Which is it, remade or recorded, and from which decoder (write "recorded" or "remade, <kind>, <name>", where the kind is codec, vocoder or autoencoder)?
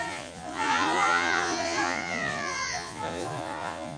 remade, vocoder, Vocos